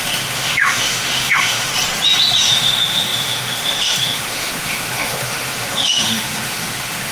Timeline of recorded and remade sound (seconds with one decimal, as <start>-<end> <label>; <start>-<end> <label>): 0.0-1.7 remade; 1.7-2.4 recorded; 2.4-7.1 remade